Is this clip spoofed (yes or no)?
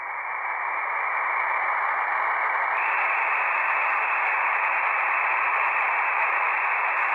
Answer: no